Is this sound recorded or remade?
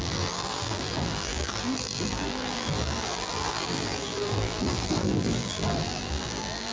remade